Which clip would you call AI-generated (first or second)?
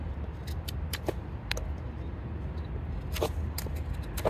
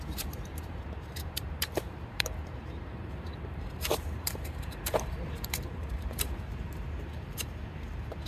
second